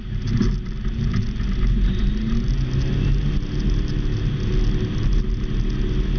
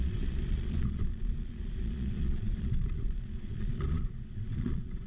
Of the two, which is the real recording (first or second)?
first